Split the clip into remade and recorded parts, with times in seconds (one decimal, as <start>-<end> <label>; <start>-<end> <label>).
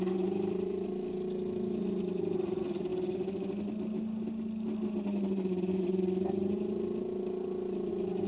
0.0-8.3 recorded